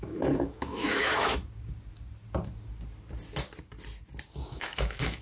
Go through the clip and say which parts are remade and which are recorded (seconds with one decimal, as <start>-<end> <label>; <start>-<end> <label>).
0.0-1.4 remade; 1.4-4.5 recorded; 4.5-5.2 remade

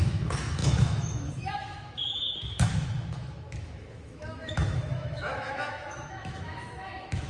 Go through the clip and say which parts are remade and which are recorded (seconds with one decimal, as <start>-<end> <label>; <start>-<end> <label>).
0.0-7.3 remade

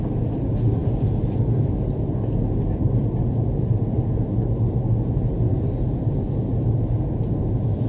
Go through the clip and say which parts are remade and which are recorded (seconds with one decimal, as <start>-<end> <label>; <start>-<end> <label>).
0.0-7.9 recorded

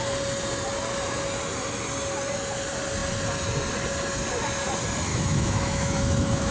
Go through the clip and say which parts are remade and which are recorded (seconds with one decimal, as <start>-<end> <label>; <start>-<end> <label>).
0.0-5.1 recorded; 5.1-6.5 remade

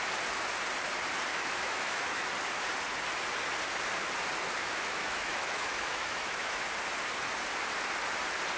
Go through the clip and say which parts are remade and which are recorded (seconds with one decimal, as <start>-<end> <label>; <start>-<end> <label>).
0.0-1.3 recorded; 1.3-2.3 remade; 2.3-4.6 recorded; 4.6-6.6 remade; 6.6-8.6 recorded